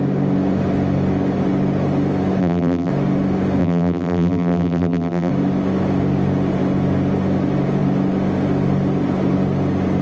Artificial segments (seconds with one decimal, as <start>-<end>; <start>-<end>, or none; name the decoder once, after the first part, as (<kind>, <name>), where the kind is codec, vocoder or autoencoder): 2.4-2.9 (vocoder, BigVGAN v2); 3.6-5.3